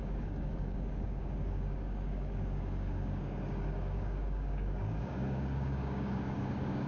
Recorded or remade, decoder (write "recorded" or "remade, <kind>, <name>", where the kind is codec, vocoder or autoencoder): remade, codec, DAC